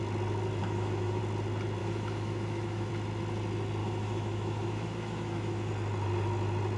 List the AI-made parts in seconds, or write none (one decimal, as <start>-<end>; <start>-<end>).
0.6-1.2; 1.8-2.9; 3.8-5.7